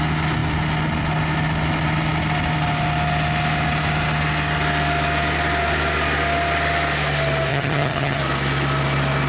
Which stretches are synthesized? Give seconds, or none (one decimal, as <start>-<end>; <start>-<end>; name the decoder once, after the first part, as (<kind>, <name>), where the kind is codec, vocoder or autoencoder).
7.5-8.2 (vocoder, HiFi-GAN)